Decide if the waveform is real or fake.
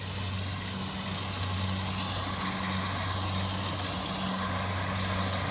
real